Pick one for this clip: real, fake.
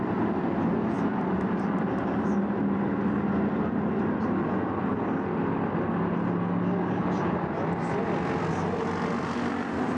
real